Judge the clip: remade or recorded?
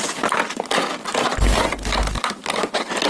recorded